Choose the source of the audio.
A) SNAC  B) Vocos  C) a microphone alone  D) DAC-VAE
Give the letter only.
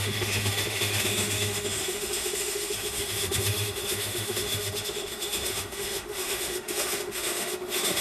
D